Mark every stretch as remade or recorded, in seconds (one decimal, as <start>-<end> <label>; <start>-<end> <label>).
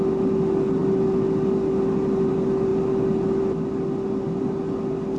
0.0-5.2 recorded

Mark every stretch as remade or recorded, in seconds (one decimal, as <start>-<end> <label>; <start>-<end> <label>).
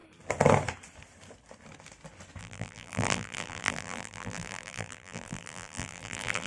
0.0-2.4 recorded; 2.4-6.5 remade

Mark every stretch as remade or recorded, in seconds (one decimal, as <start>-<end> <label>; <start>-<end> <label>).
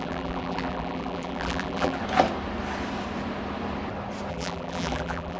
0.0-2.0 remade; 2.0-4.3 recorded; 4.3-5.4 remade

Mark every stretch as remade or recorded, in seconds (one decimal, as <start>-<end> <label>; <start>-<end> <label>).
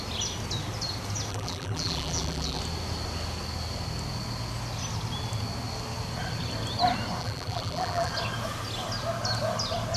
0.0-1.3 recorded; 1.3-2.6 remade; 2.6-7.2 recorded; 7.2-8.1 remade; 8.1-10.0 recorded